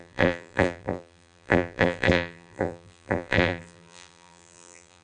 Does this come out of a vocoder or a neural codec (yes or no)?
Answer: yes